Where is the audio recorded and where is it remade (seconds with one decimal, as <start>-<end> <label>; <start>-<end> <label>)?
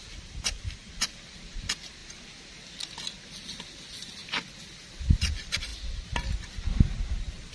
0.0-7.5 recorded